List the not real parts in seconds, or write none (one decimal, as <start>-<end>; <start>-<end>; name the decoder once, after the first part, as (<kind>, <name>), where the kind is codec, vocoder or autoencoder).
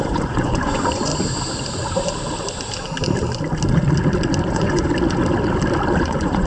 0.0-1.1 (vocoder, Vocos); 4.5-4.9; 6.0-6.5